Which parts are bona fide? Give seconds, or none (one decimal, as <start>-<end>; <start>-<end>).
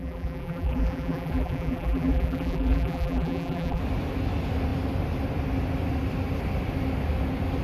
3.8-7.6